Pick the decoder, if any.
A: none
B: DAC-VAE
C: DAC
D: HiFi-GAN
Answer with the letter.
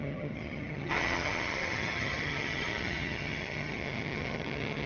D